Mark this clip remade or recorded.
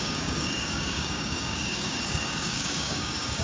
remade